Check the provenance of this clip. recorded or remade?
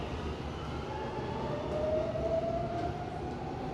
recorded